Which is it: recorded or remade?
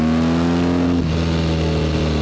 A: recorded